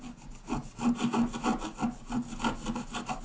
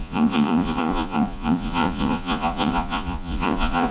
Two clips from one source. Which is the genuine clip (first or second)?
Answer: first